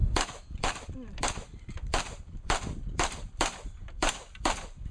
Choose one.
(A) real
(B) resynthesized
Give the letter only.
B